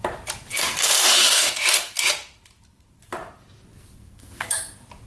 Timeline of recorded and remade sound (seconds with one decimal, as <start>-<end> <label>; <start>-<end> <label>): 0.0-0.5 recorded; 0.5-1.5 remade; 1.5-3.7 recorded; 3.7-4.6 remade; 4.6-5.1 recorded